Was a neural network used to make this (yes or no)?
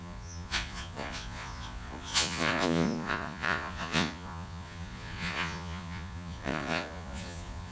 yes